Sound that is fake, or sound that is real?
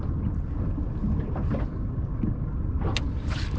real